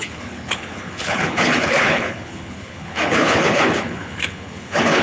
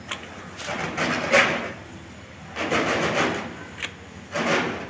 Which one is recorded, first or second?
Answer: second